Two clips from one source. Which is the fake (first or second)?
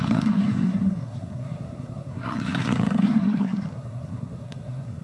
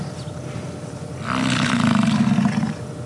first